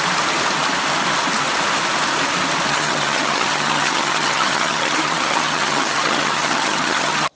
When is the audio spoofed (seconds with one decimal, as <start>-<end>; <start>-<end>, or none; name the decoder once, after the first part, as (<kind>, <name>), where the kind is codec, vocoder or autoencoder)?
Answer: 2.7-7.4 (vocoder, HiFi-GAN)